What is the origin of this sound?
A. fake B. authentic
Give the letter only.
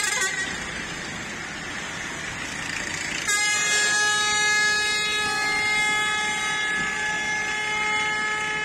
B